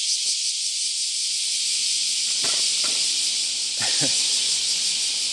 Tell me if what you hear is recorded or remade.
recorded